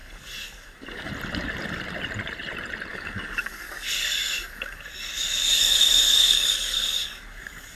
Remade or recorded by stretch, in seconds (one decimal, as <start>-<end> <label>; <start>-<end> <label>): 0.0-1.1 remade; 1.1-2.9 recorded; 2.9-7.8 remade